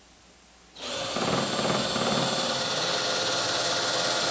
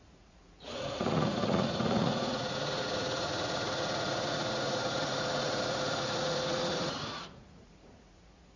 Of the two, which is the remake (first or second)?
second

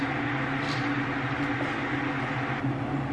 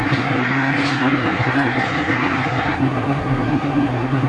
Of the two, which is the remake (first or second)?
second